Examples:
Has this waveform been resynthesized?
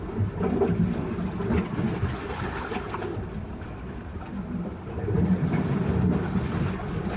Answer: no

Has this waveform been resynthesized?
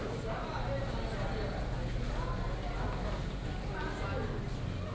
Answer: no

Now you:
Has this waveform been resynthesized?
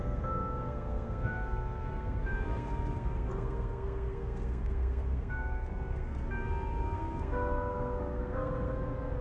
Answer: yes